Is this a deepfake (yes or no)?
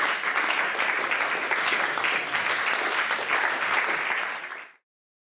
no